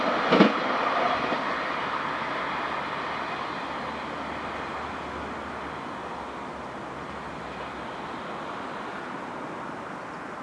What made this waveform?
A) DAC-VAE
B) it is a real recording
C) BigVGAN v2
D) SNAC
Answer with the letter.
B